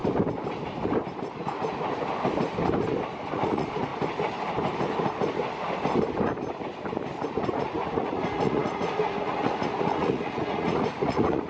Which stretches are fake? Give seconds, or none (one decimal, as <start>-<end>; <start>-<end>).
3.3-3.9; 7.3-11.5